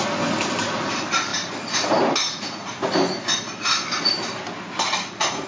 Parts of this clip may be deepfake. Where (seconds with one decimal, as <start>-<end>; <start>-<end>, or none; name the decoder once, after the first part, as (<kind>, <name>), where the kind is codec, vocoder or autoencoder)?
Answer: none